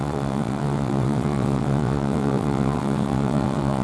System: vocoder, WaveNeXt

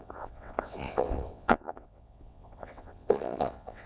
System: vocoder, WaveNeXt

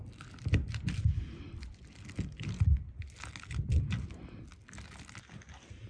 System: none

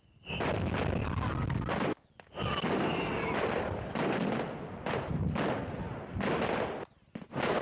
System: none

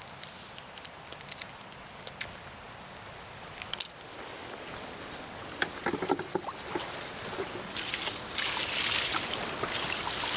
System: none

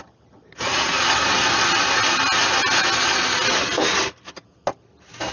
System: none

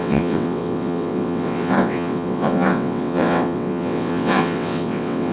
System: vocoder, WaveNeXt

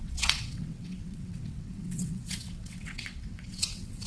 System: vocoder, WaveNeXt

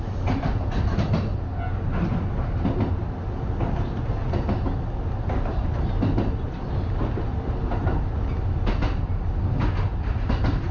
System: none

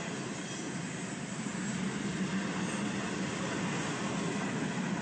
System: none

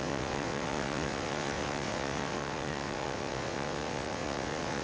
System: vocoder, WaveNeXt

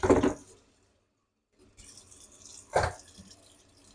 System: none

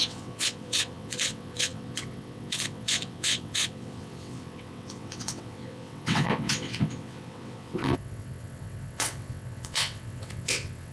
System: vocoder, WaveNeXt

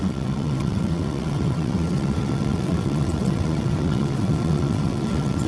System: vocoder, WaveNeXt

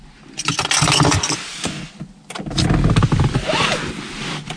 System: none